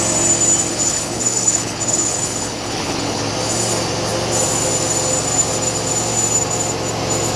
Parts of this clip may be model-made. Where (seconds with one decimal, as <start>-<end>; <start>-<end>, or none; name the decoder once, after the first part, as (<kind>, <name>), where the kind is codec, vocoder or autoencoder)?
0.7-3.2 (codec, HILCodec)